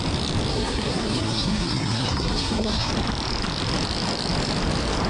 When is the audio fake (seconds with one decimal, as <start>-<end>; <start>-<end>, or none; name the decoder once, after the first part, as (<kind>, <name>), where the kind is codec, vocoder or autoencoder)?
0.5-2.9 (codec, SNAC)